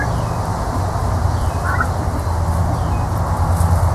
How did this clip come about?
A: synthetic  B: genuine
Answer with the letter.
B